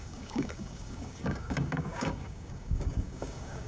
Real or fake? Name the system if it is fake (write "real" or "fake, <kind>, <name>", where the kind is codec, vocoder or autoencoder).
fake, codec, DAC